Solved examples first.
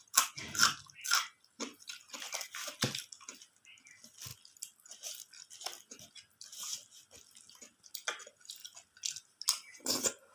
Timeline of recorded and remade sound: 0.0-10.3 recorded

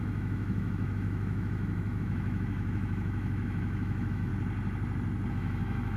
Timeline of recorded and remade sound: 0.0-4.3 remade; 4.3-5.3 recorded; 5.3-6.0 remade

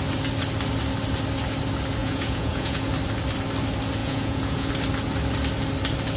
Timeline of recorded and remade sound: 0.0-2.0 recorded; 2.0-2.9 remade; 2.9-4.0 recorded; 4.0-4.7 remade; 4.7-6.2 recorded